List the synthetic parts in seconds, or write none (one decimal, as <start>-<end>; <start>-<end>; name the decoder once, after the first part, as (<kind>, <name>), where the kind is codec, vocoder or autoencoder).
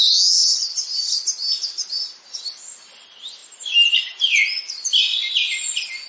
none